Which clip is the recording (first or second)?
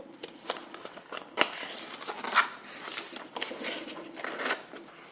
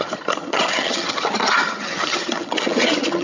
first